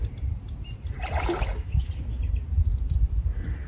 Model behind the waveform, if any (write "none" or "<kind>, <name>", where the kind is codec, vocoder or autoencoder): none